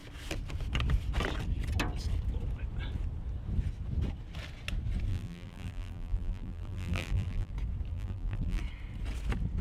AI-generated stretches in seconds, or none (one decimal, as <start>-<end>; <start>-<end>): 5.1-7.5; 7.9-8.6